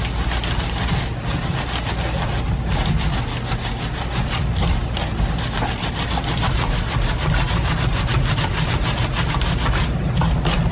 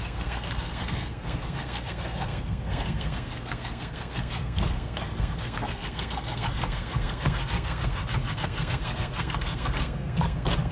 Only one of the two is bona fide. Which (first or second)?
first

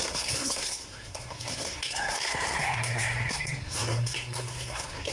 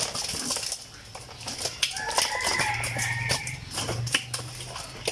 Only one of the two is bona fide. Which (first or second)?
second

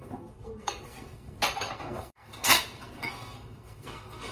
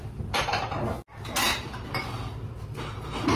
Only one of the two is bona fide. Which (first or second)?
second